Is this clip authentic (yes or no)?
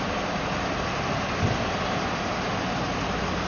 yes